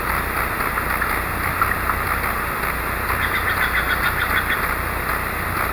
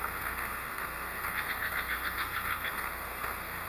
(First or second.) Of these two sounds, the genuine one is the first